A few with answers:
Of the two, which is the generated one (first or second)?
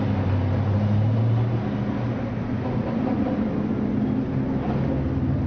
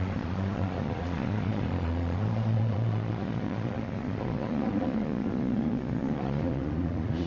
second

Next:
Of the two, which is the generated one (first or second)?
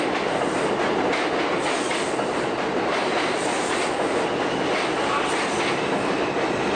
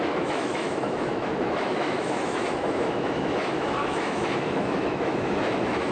second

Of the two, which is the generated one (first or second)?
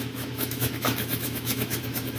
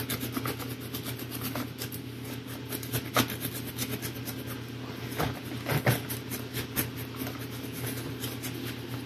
first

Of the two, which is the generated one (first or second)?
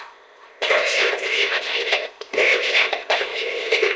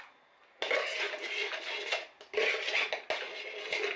first